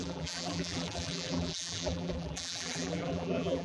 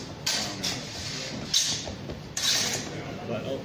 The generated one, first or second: first